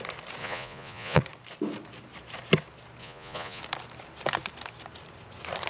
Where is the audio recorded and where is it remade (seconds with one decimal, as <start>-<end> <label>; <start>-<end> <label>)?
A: 0.0-0.4 recorded; 0.4-1.2 remade; 1.2-3.0 recorded; 3.0-3.6 remade; 3.6-5.7 recorded